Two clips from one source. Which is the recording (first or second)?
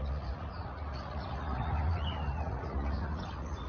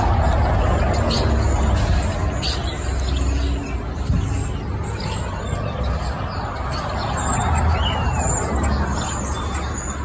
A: second